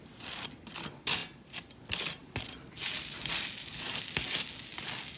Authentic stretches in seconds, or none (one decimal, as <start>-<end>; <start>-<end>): 0.0-5.2